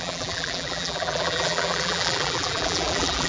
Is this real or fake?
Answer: fake